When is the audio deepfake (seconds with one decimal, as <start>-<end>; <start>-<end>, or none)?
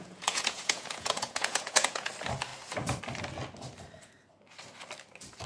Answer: 0.0-2.1